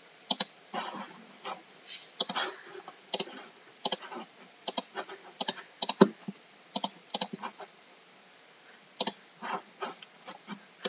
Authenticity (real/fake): real